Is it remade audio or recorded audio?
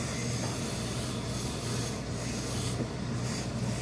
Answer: recorded